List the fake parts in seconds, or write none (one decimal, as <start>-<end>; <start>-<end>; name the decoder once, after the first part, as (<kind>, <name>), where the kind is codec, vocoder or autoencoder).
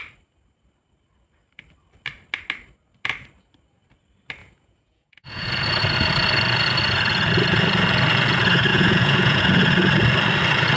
4.4-5.5 (vocoder, Vocos); 8.7-9.4